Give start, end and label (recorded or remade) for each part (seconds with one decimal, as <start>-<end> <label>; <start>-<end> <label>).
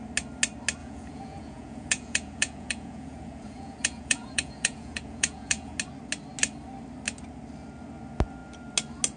0.0-0.8 recorded; 0.8-5.8 remade; 5.8-9.2 recorded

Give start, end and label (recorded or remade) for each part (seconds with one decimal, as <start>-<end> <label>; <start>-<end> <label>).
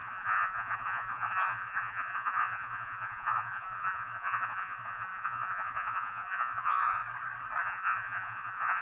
0.0-7.0 remade; 7.0-7.6 recorded; 7.6-8.8 remade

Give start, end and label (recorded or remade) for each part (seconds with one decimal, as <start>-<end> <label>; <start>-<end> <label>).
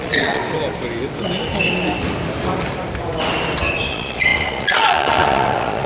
0.0-0.4 remade; 0.4-3.9 recorded; 3.9-5.9 remade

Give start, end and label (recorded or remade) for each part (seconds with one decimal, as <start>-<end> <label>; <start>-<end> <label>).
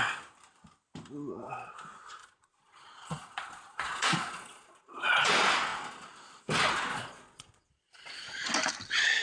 0.0-2.2 recorded; 2.2-5.3 remade; 5.3-6.9 recorded; 6.9-8.5 remade; 8.5-9.2 recorded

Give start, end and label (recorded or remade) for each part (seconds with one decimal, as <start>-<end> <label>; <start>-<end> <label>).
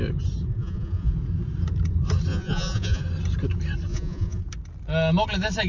0.0-0.5 recorded; 0.5-1.1 remade; 1.1-2.3 recorded; 2.3-3.0 remade; 3.0-3.9 recorded; 3.9-4.4 remade; 4.4-5.7 recorded